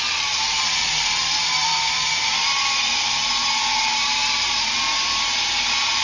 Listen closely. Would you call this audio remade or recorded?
remade